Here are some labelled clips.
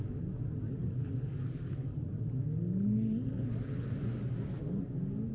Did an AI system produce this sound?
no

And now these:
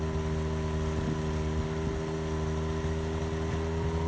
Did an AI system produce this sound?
no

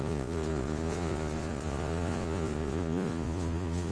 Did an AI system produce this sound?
yes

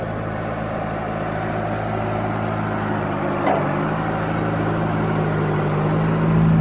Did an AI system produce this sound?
no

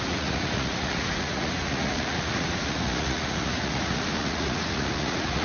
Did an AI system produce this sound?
yes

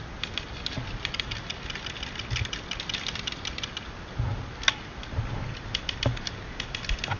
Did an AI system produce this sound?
no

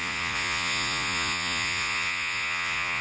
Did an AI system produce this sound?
yes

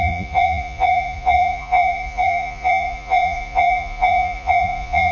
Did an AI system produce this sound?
yes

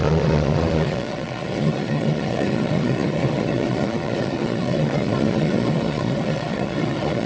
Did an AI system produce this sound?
yes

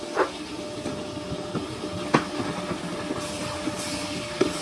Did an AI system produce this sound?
no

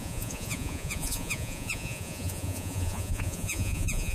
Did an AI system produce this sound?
yes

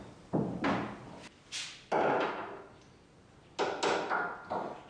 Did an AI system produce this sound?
no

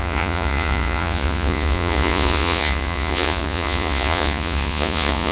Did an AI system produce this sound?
yes